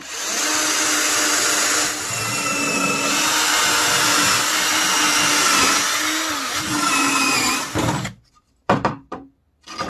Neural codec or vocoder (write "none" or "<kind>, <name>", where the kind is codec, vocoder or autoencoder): none